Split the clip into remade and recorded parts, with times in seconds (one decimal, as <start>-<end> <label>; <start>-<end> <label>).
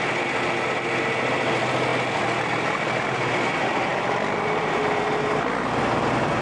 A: 0.0-3.9 recorded; 3.9-4.8 remade; 4.8-6.4 recorded